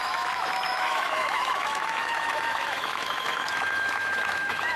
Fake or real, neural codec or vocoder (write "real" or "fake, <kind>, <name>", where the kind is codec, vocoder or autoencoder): fake, autoencoder, DAC-VAE